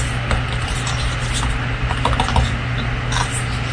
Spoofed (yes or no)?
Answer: no